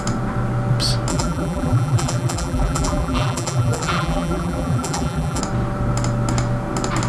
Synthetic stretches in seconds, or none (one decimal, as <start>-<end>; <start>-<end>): 1.1-5.4